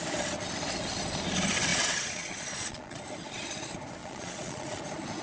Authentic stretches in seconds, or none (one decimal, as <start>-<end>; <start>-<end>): 0.0-1.7; 3.0-4.0; 4.8-5.2